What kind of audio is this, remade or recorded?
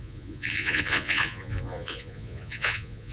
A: remade